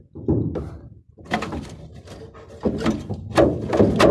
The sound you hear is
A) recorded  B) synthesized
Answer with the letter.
A